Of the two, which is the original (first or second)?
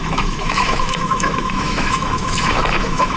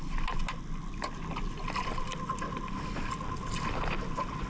second